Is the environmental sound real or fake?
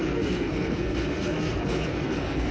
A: fake